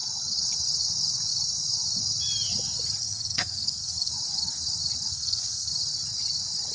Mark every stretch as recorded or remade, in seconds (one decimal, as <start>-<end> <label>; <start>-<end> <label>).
0.0-3.0 recorded; 3.0-4.1 remade; 4.1-5.1 recorded; 5.1-5.7 remade; 5.7-6.7 recorded